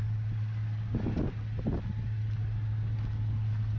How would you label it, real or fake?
real